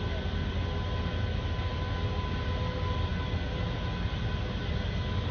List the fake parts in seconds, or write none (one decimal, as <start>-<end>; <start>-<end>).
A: none